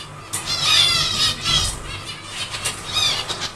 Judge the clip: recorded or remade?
recorded